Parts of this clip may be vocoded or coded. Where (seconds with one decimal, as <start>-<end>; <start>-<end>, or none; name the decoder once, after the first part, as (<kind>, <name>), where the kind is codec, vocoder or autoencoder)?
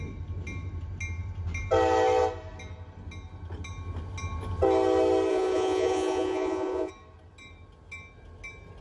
5.3-6.9 (vocoder, Vocos)